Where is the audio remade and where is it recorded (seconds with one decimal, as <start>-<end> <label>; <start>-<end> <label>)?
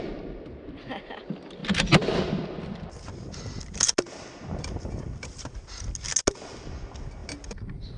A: 0.0-8.0 recorded